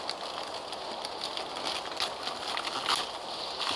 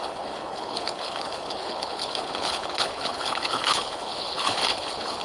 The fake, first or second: second